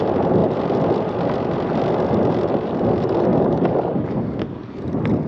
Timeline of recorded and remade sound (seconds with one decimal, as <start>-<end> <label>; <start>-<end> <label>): 0.0-3.3 recorded; 3.3-4.8 remade; 4.8-5.3 recorded